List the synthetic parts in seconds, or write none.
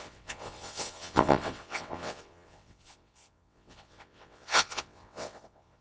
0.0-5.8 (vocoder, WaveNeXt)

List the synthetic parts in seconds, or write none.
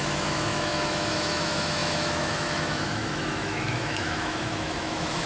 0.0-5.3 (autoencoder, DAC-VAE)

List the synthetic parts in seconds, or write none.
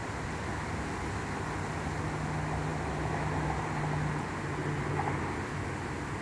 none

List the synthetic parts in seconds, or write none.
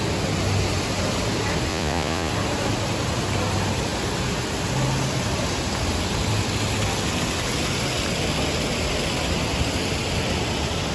1.7-2.3 (vocoder, Vocos)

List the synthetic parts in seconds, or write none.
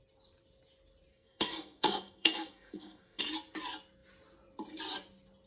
1.1-3.2 (codec, SNAC)